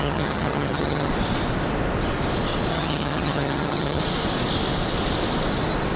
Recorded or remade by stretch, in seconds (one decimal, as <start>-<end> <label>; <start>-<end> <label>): 0.0-1.1 remade; 1.1-2.7 recorded; 2.7-4.0 remade; 4.0-6.0 recorded